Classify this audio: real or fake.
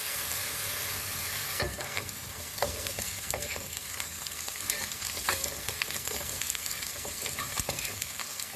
fake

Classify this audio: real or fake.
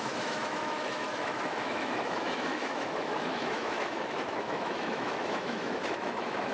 fake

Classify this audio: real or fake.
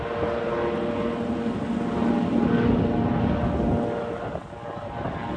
real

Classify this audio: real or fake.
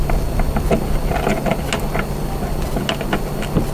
real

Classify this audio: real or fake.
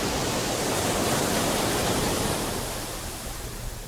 real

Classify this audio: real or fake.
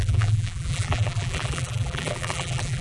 fake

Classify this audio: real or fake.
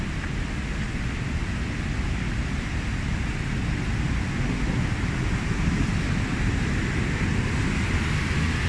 real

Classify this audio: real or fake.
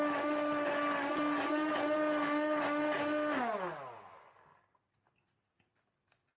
real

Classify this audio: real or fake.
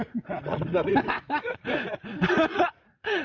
fake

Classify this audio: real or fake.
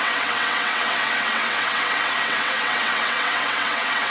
fake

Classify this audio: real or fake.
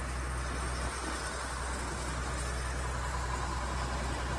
real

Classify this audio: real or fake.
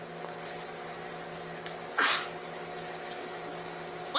real